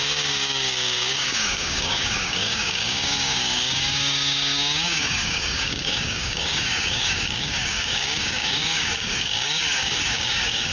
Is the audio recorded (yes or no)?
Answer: no